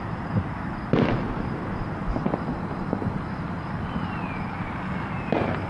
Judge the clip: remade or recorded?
recorded